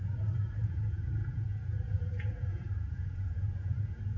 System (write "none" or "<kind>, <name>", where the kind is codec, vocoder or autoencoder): vocoder, Vocos